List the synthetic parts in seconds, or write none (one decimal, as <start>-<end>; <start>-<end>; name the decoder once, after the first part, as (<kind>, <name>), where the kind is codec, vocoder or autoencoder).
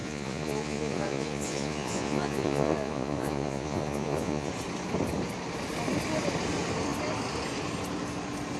0.0-4.5 (vocoder, Vocos)